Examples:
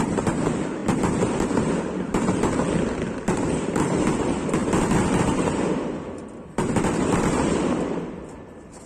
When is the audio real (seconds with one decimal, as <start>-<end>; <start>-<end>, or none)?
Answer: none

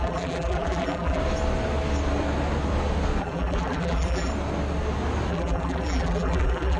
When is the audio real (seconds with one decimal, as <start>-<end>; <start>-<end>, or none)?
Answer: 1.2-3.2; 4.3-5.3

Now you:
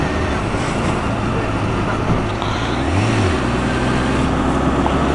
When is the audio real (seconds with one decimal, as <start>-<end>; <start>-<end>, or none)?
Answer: 0.0-5.1

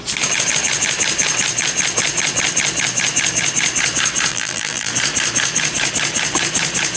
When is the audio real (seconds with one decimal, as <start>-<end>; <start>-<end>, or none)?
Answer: 0.0-4.3; 4.9-7.0

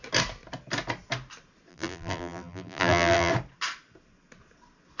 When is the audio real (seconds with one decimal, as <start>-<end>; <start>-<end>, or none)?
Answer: 0.0-1.7; 3.3-5.0

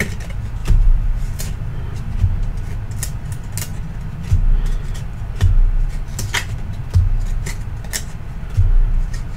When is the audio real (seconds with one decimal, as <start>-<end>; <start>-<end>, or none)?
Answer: 0.0-0.6; 2.2-9.4